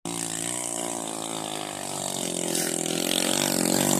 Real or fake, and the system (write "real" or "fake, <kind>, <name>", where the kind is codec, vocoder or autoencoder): real